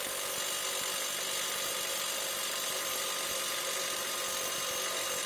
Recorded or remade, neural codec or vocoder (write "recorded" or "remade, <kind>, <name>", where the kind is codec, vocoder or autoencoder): recorded